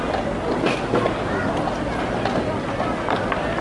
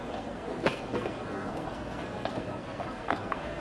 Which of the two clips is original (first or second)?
first